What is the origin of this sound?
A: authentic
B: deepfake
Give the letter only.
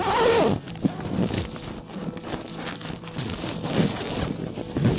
A